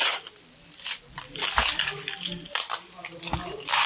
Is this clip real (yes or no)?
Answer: yes